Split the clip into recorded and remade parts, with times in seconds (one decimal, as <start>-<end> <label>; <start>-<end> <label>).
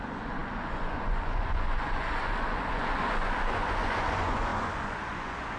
0.0-5.6 remade